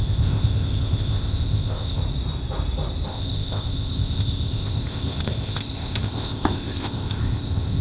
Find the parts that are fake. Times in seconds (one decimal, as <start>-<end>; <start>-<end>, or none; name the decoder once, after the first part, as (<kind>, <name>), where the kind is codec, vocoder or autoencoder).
0.0-2.0 (codec, ZipCodec); 3.1-7.8